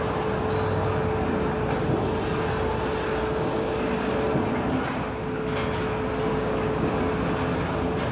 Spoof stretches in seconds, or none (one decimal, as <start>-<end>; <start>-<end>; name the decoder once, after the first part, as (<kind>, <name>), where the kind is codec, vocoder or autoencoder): 6.3-6.9 (codec, DAC)